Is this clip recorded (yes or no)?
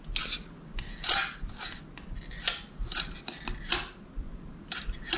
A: yes